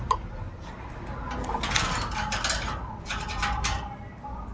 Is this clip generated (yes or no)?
no